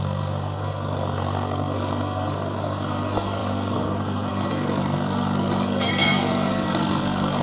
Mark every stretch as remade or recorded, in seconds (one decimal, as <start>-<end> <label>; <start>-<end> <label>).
0.0-7.4 remade